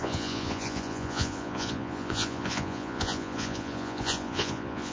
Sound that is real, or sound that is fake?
fake